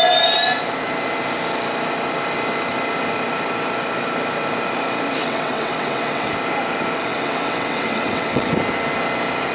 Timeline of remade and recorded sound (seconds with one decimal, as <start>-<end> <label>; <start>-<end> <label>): 0.0-5.2 recorded; 5.2-6.3 remade; 6.3-7.0 recorded; 7.0-8.5 remade; 8.5-9.5 recorded